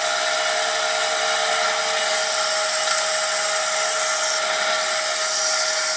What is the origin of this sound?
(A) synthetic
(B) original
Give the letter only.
B